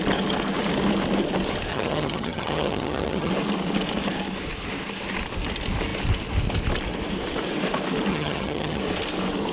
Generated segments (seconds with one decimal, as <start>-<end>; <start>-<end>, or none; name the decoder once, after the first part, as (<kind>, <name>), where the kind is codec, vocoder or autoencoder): 1.7-3.3 (vocoder, HiFi-GAN); 8.1-8.8

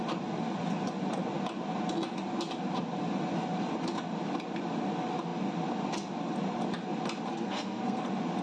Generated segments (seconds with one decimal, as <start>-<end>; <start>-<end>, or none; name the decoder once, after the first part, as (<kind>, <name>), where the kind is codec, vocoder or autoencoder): 7.3-8.0 (codec, SNAC)